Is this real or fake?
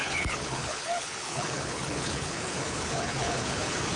fake